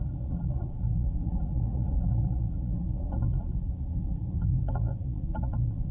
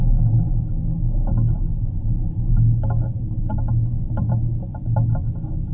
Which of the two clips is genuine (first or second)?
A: second